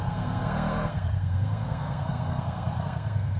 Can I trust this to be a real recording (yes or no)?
no